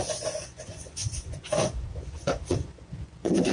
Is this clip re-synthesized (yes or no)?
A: yes